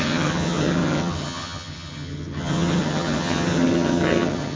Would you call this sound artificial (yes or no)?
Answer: yes